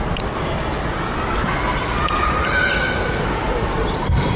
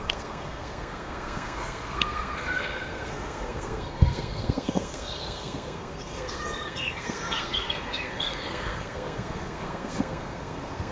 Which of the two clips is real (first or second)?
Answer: first